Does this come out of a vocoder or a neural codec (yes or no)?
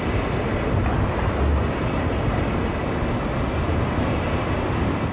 no